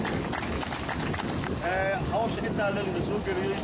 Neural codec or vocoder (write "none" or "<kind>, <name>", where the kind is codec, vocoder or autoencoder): none